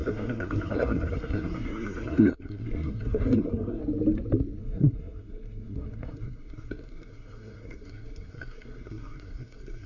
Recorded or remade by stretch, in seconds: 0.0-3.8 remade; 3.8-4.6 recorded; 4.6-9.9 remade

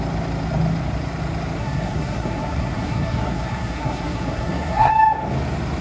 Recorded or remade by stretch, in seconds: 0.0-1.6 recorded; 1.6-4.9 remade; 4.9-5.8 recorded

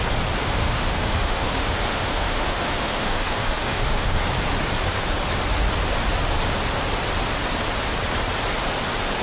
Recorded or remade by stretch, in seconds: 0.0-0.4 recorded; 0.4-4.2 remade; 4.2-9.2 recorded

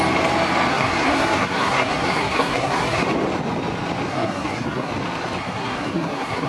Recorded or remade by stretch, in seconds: 0.0-0.7 recorded; 0.7-3.0 remade; 3.0-4.1 recorded; 4.1-4.9 remade; 4.9-5.4 recorded; 5.4-6.5 remade

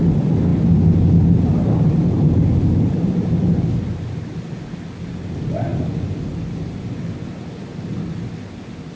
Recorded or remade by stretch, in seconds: 0.0-9.0 recorded

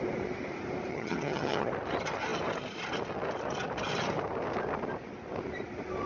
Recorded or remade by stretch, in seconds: 0.0-0.9 recorded; 0.9-1.7 remade; 1.7-6.1 recorded